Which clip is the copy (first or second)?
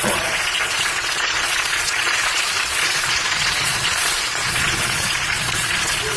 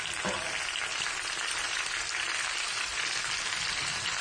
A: first